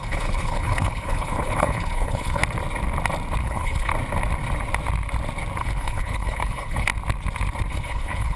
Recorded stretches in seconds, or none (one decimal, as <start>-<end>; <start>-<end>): 2.4-3.4; 3.9-5.6; 6.9-7.7